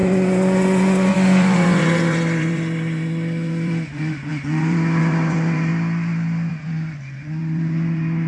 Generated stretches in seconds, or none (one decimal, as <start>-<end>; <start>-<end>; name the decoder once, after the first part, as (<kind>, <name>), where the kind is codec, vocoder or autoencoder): 0.0-5.7 (vocoder, Vocos); 6.5-8.3